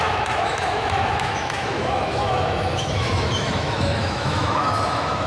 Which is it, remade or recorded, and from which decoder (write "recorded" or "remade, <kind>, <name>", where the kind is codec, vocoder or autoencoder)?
remade, autoencoder, DAC-VAE